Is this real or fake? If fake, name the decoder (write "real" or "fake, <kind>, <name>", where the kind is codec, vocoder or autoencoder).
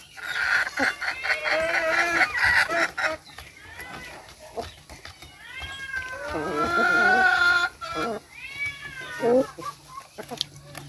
real